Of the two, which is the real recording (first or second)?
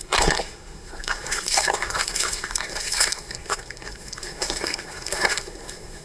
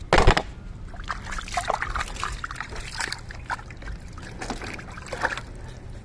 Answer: second